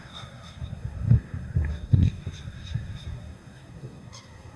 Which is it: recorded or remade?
remade